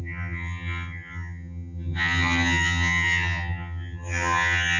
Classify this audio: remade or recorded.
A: remade